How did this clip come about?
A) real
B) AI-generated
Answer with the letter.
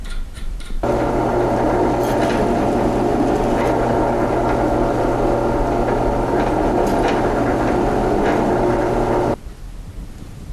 A